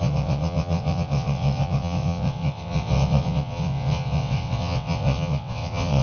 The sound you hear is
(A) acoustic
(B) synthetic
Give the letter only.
B